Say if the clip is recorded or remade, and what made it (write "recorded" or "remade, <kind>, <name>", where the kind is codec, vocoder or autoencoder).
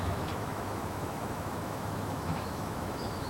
remade, autoencoder, DAC-VAE